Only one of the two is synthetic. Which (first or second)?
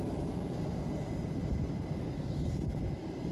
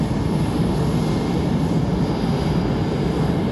first